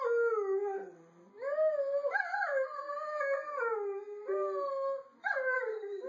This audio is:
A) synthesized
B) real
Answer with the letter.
B